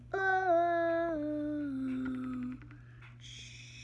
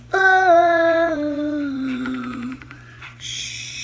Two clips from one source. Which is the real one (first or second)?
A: first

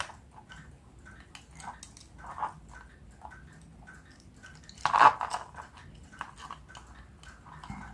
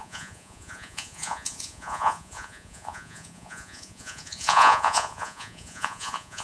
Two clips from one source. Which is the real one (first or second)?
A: first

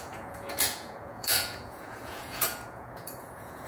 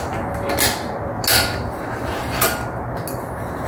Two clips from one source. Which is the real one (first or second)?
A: second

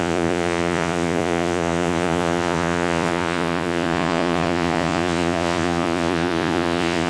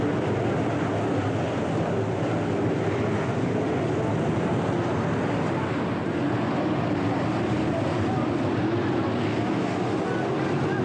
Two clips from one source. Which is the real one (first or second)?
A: second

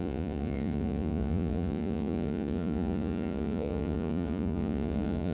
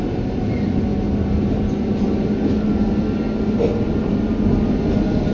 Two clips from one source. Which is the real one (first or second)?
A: second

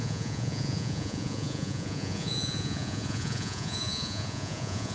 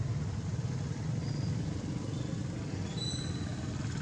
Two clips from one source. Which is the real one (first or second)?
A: second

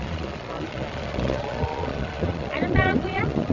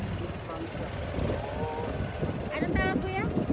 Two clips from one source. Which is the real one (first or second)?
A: second